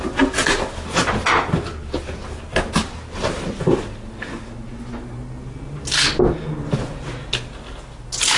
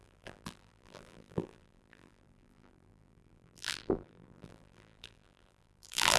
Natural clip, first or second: first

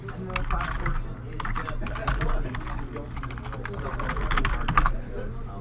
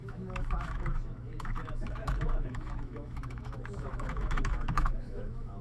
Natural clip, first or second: first